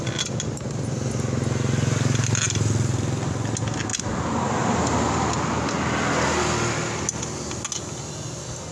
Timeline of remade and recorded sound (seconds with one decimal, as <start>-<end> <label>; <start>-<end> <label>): 0.0-8.7 recorded